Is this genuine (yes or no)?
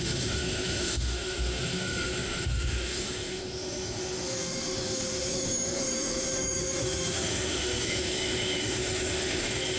no